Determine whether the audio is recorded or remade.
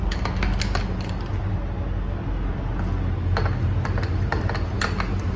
recorded